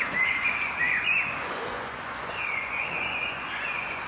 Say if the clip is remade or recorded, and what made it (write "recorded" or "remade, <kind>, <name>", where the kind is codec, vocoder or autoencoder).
remade, vocoder, Vocos